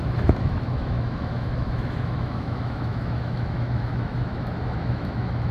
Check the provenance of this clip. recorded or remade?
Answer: remade